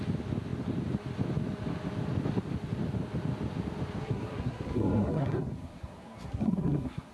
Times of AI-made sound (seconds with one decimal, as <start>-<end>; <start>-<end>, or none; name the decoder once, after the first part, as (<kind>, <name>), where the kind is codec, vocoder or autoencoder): 4.0-7.1 (codec, SNAC)